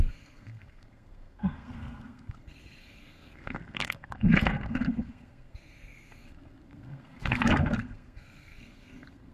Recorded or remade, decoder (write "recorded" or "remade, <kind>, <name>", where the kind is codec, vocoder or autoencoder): remade, codec, SNAC